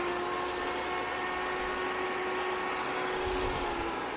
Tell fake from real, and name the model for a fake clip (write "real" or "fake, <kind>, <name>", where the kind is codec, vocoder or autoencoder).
real